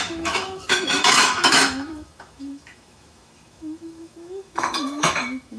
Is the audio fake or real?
fake